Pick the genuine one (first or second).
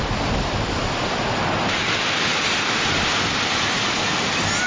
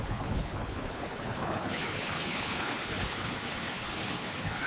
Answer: first